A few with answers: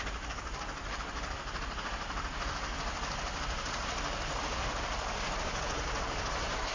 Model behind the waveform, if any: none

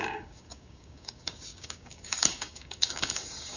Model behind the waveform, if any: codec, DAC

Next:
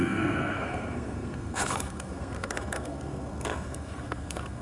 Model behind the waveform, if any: codec, SNAC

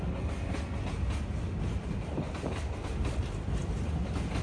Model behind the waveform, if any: none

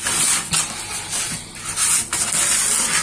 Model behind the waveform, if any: none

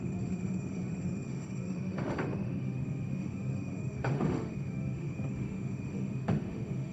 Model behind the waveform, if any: autoencoder, DAC-VAE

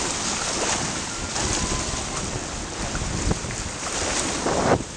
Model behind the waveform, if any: none